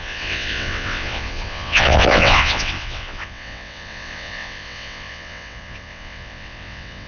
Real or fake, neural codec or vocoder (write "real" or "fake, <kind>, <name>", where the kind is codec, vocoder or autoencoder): fake, vocoder, WaveNeXt